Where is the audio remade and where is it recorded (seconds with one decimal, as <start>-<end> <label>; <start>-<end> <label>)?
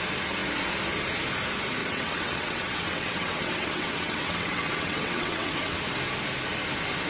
0.0-1.8 recorded; 1.8-5.8 remade; 5.8-7.1 recorded